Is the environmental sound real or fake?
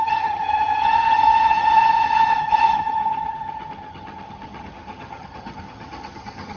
fake